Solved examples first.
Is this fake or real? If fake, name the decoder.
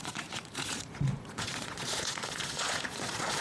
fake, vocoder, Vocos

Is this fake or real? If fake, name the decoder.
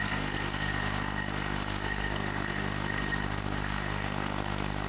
fake, codec, SNAC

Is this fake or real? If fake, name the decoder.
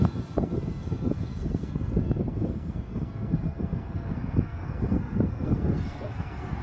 fake, codec, SNAC